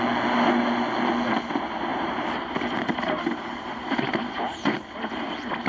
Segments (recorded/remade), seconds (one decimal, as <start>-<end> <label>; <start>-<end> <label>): 0.0-1.9 recorded; 1.9-5.3 remade; 5.3-5.7 recorded